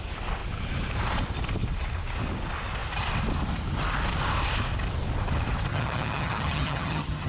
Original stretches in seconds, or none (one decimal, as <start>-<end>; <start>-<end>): 0.0-5.7